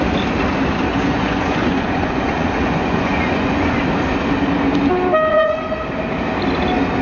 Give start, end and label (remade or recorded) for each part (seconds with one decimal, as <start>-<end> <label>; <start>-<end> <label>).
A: 0.0-0.9 recorded; 0.9-3.8 remade; 3.8-5.3 recorded; 5.3-6.0 remade; 6.0-7.0 recorded